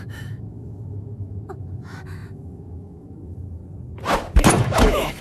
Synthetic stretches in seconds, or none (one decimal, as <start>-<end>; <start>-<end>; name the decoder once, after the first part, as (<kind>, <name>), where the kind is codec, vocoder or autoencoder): 0.0-3.6 (autoencoder, DAC-VAE); 4.5-5.2